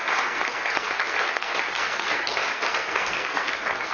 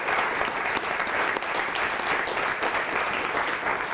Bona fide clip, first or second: second